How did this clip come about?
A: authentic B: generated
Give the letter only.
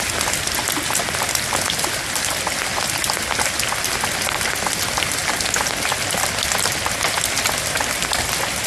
A